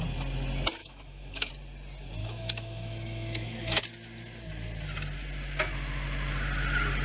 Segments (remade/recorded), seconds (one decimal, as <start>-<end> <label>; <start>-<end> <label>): 0.0-0.8 recorded; 0.8-1.5 remade; 1.5-2.2 recorded; 2.2-3.8 remade; 3.8-7.0 recorded